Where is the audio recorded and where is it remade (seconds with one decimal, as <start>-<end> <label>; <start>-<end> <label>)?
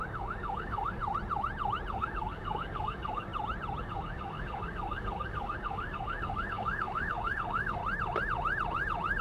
0.0-1.0 remade; 1.0-1.9 recorded; 1.9-3.3 remade; 3.3-3.8 recorded; 3.8-7.8 remade; 7.8-9.2 recorded